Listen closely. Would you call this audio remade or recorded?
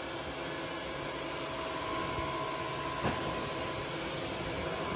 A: recorded